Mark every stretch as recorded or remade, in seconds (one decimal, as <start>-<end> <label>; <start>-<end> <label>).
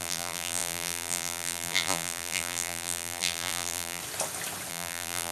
0.0-4.0 remade; 4.0-4.7 recorded; 4.7-5.3 remade